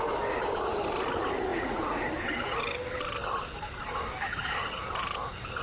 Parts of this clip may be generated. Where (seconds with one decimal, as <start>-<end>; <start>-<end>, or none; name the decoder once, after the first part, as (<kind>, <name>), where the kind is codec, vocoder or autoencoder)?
1.5-2.0 (vocoder, Vocos)